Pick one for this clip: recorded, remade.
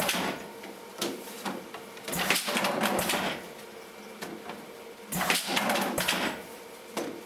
recorded